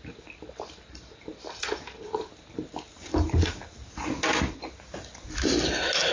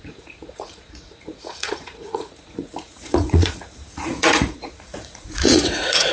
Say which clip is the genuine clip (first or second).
first